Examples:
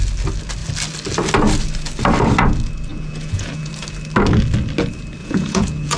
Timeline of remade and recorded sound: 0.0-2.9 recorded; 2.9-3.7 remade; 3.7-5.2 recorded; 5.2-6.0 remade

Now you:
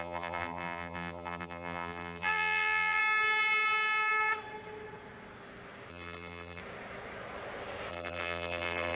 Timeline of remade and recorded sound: 0.0-3.0 remade; 3.0-5.9 recorded; 5.9-6.6 remade; 6.6-7.9 recorded; 7.9-9.0 remade

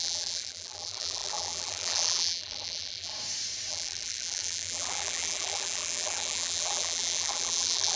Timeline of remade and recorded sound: 0.0-3.1 remade; 3.1-3.7 recorded; 3.7-8.0 remade

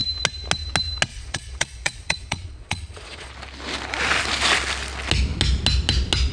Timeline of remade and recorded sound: 0.0-1.1 recorded; 1.1-3.3 remade; 3.3-6.3 recorded

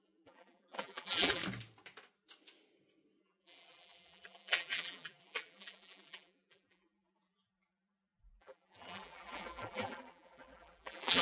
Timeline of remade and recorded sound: 0.0-1.4 remade; 1.4-3.2 recorded; 3.2-11.2 remade

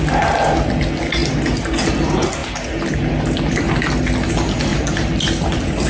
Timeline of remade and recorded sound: 0.0-5.9 recorded

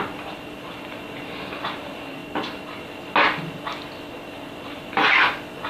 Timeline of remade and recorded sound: 0.0-2.2 remade; 2.2-4.0 recorded; 4.0-5.7 remade